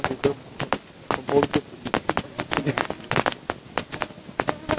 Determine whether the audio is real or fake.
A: real